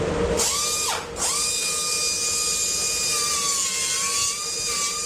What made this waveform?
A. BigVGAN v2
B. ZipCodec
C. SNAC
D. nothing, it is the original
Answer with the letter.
D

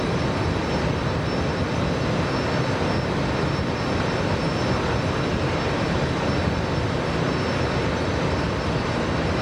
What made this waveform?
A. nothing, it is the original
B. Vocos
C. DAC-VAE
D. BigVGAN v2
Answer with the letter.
A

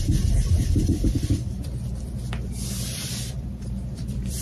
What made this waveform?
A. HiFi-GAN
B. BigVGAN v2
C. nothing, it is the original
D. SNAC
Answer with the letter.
B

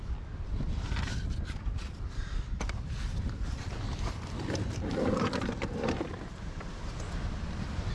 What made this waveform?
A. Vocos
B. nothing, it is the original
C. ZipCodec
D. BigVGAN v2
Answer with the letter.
D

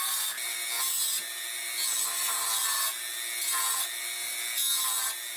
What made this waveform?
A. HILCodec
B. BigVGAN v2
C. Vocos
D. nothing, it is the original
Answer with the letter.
D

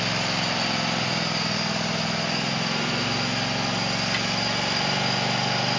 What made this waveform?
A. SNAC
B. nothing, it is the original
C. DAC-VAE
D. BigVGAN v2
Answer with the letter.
B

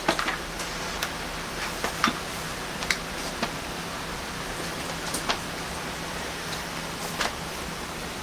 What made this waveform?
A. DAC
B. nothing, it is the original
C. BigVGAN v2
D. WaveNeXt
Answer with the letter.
C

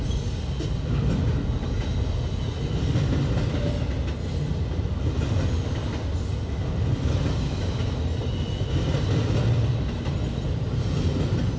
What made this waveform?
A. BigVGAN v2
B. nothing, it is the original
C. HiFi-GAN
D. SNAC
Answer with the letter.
B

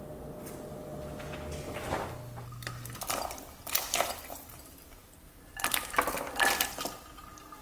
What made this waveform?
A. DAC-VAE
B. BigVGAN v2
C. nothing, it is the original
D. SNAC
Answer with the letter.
C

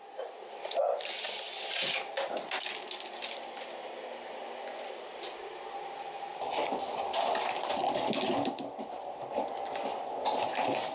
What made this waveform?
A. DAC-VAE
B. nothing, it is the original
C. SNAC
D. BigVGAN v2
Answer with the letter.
B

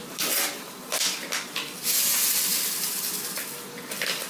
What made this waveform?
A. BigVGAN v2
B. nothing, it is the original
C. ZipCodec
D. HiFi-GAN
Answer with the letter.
B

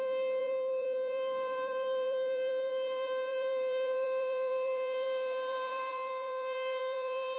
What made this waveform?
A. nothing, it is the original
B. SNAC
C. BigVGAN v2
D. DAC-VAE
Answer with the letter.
C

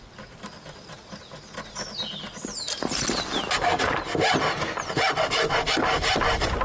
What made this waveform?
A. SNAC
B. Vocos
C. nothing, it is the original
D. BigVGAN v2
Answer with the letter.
C